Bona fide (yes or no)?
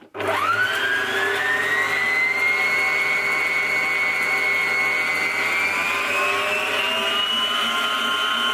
yes